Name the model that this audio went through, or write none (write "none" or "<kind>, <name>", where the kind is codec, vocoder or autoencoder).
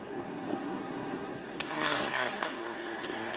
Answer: codec, SNAC